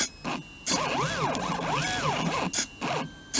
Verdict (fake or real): real